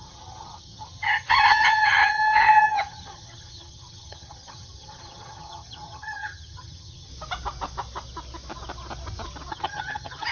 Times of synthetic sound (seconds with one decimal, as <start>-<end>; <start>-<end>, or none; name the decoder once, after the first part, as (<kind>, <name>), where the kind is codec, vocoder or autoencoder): 0.0-7.1 (vocoder, HiFi-GAN); 9.5-10.3